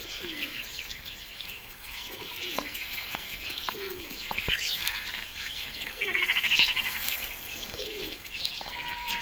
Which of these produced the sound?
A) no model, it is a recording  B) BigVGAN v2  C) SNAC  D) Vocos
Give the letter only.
C